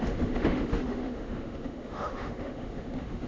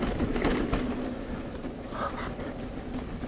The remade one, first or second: first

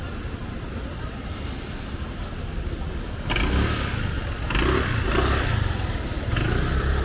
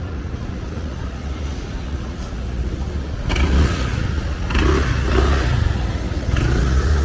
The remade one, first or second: second